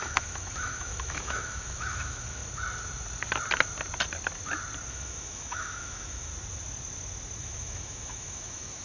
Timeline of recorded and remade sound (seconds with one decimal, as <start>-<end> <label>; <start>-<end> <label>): 0.0-2.4 remade; 2.4-4.9 recorded; 4.9-6.3 remade; 6.3-7.4 recorded; 7.4-8.8 remade